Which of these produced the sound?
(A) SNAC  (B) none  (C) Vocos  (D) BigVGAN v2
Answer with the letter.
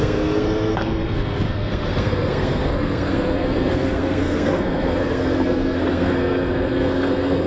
A